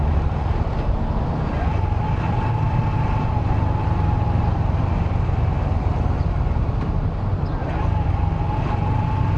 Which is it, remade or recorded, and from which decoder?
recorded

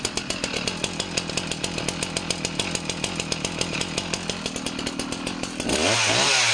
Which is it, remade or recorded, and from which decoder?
recorded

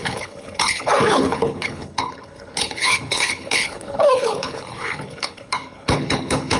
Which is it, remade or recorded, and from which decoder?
remade, codec, HILCodec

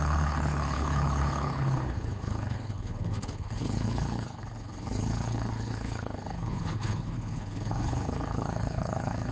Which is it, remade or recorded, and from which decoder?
remade, codec, HILCodec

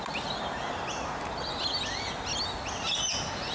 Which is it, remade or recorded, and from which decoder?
recorded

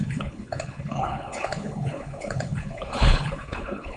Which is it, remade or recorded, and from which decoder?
remade, codec, HILCodec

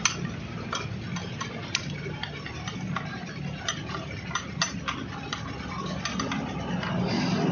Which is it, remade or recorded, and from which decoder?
recorded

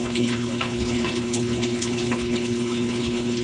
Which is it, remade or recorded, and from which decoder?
remade, codec, HILCodec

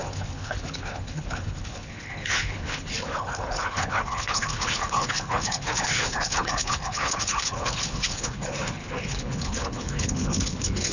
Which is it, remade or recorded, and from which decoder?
remade, codec, HILCodec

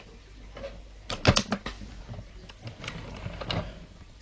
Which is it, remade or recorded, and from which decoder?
recorded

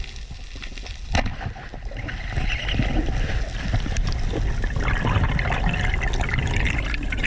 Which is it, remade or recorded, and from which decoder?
recorded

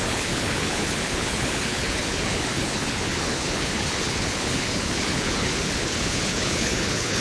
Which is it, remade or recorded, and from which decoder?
remade, codec, HILCodec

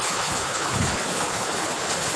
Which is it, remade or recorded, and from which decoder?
remade, codec, HILCodec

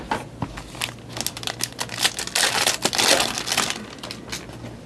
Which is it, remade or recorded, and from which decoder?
recorded